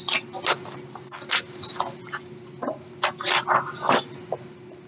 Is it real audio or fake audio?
real